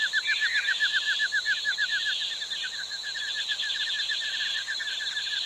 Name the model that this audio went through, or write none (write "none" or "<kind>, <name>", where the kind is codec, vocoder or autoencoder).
none